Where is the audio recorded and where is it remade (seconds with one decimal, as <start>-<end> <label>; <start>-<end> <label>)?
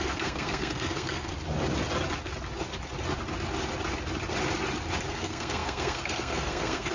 0.0-1.3 remade; 1.3-5.1 recorded; 5.1-6.9 remade